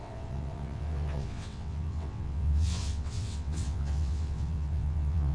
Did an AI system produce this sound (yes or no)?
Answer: yes